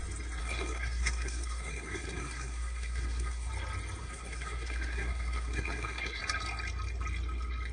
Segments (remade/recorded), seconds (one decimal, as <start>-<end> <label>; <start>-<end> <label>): 0.0-0.4 recorded; 0.4-3.5 remade; 3.5-4.0 recorded; 4.0-6.2 remade; 6.2-7.7 recorded